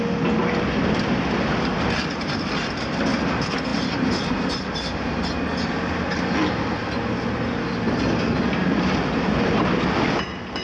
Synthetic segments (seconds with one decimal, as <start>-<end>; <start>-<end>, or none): 3.7-5.1; 8.6-9.6